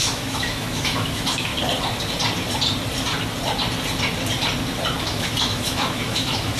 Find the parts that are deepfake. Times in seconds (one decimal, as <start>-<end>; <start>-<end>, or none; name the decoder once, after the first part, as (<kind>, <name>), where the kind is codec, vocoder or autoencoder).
0.0-1.5 (autoencoder, DAC-VAE); 5.0-6.6